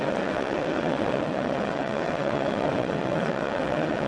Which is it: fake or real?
fake